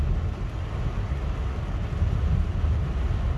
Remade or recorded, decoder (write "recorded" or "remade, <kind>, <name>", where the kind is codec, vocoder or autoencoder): recorded